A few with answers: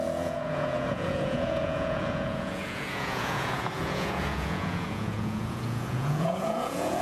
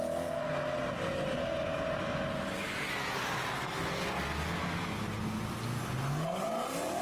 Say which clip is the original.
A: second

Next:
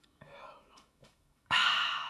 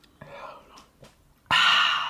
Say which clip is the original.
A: second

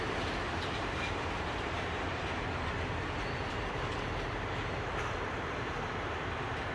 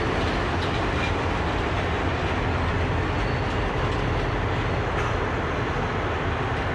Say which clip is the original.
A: second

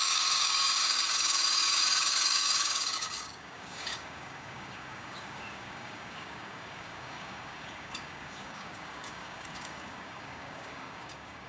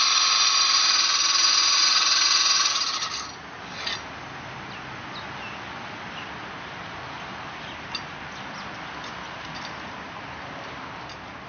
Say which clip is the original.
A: second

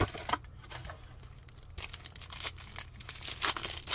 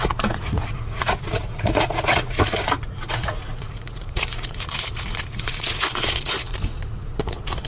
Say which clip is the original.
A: first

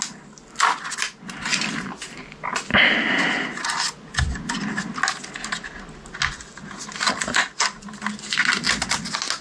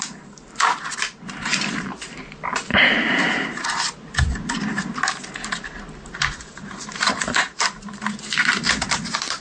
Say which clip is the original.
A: first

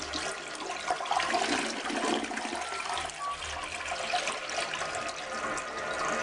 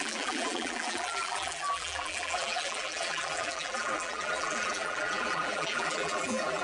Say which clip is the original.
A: first